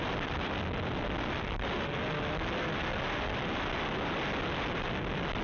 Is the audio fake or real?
real